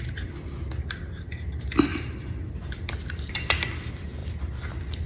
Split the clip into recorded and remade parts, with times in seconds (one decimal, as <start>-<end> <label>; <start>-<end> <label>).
0.0-4.2 recorded; 4.2-5.1 remade